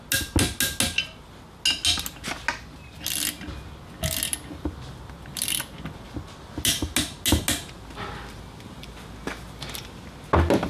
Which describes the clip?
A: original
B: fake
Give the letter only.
A